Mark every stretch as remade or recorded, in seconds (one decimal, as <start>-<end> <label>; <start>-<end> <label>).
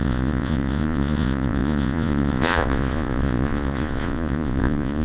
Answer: 0.0-5.0 remade